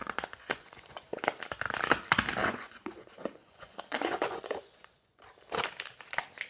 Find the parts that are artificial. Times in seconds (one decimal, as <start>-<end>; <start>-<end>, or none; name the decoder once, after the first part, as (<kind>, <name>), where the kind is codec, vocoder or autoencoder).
0.0-1.2 (vocoder, Vocos); 2.4-5.2